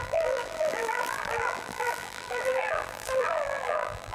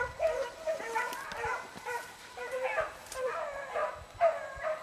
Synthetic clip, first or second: first